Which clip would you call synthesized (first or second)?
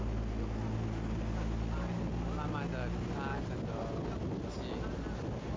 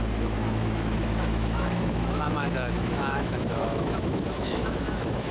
second